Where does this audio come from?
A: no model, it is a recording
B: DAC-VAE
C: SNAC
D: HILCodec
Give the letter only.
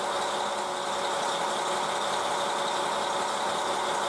A